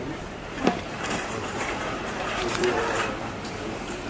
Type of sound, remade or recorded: remade